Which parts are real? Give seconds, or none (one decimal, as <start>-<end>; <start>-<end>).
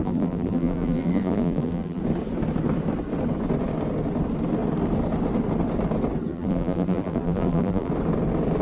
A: 2.0-6.3; 7.9-8.6